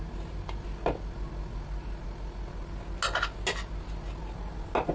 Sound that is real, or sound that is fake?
real